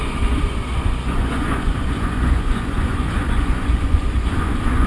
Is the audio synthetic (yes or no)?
yes